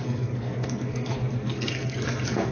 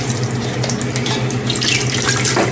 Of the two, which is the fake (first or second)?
first